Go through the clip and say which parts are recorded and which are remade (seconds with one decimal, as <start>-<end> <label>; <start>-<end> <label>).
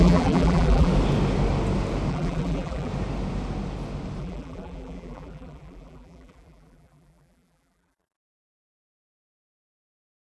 0.0-0.9 remade; 0.9-2.1 recorded; 2.1-2.9 remade; 2.9-4.2 recorded; 4.2-10.4 remade